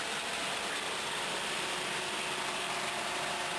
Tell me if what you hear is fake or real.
real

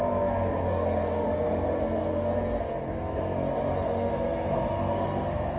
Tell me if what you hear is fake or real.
fake